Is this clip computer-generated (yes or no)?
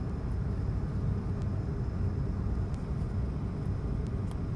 no